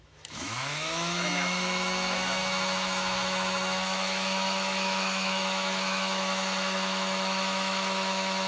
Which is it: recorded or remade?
remade